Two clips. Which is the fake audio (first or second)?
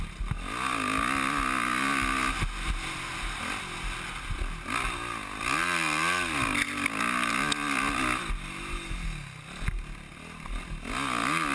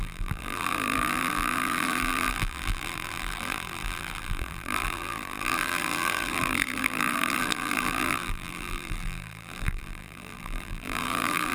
second